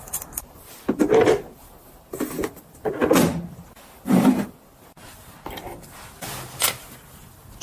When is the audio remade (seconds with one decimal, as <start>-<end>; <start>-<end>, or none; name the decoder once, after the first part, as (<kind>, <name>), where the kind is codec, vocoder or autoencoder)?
0.0-1.0 (vocoder, BigVGAN v2); 2.1-3.0